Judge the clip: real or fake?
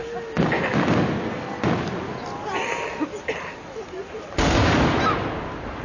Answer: real